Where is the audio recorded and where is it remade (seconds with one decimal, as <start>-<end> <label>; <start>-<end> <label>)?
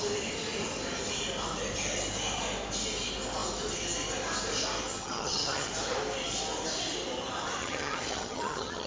0.0-4.9 recorded; 4.9-5.7 remade; 5.7-7.6 recorded; 7.6-8.9 remade